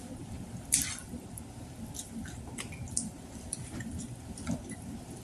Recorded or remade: remade